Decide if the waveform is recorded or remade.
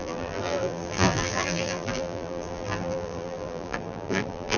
remade